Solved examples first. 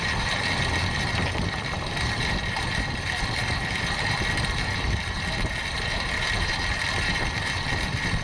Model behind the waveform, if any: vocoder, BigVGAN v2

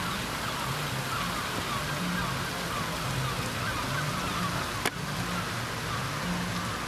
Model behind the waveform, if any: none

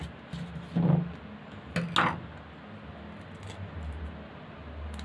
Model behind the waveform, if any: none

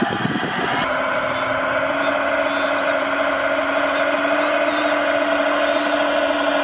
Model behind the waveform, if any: none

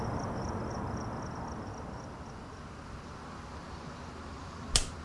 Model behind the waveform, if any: none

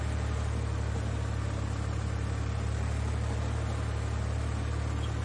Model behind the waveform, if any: none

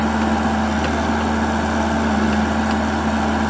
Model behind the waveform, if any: none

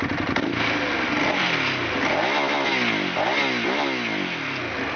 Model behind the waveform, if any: none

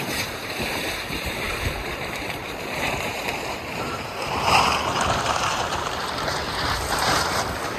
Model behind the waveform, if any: vocoder, BigVGAN v2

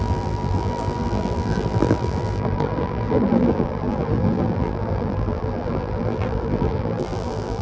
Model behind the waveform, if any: vocoder, BigVGAN v2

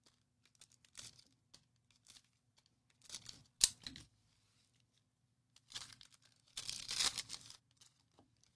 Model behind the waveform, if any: none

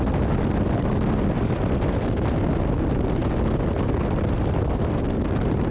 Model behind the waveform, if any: none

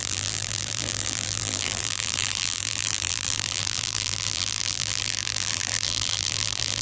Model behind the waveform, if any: vocoder, BigVGAN v2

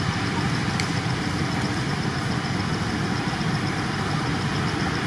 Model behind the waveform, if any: none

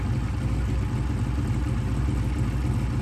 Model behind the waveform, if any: none